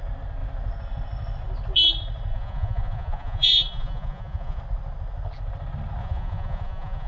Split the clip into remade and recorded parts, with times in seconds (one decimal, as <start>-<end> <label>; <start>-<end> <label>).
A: 0.0-2.3 recorded; 2.3-4.6 remade; 4.6-6.0 recorded; 6.0-7.1 remade